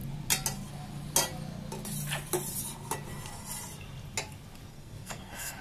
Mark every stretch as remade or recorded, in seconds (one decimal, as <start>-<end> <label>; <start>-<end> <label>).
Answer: 0.0-4.7 recorded; 4.7-5.6 remade

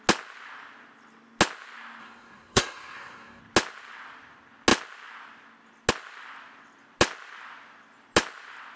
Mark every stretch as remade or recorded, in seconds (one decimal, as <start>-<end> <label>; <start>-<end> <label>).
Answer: 0.0-2.0 recorded; 2.0-3.4 remade; 3.4-8.8 recorded

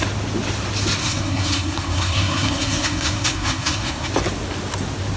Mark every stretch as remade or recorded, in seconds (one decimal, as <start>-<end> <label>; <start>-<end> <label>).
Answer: 0.0-1.0 recorded; 1.0-4.1 remade; 4.1-5.2 recorded

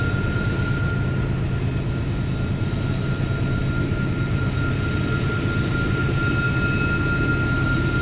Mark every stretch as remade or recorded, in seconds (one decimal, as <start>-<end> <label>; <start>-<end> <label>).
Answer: 0.0-8.0 recorded

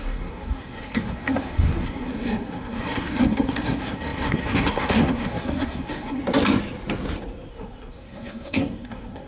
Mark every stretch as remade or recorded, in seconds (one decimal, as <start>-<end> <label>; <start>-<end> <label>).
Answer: 0.0-6.2 remade; 6.2-7.5 recorded; 7.5-9.3 remade

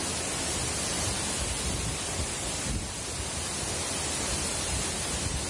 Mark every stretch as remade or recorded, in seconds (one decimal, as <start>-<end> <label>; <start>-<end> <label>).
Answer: 0.0-5.5 recorded